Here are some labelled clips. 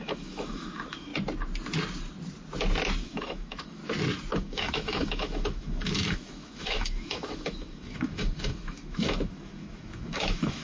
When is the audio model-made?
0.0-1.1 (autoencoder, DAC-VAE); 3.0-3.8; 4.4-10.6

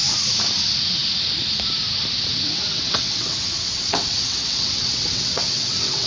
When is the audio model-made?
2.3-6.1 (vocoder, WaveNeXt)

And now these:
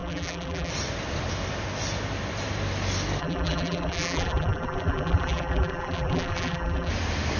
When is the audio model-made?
0.0-0.7 (vocoder, BigVGAN v2); 3.2-6.9